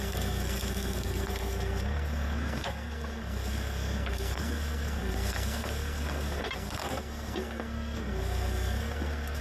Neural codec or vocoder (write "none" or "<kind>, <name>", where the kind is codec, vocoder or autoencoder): codec, SNAC